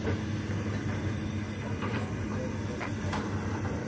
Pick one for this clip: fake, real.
real